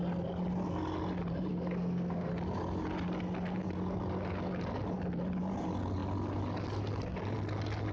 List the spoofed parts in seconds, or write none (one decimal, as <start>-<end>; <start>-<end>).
1.5-2.3